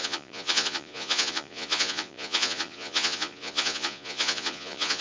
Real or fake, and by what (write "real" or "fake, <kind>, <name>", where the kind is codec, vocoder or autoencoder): fake, vocoder, Vocos